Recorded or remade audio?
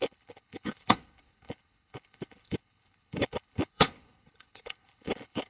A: remade